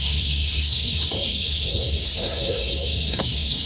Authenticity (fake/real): fake